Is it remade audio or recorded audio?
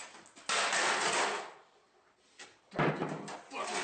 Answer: recorded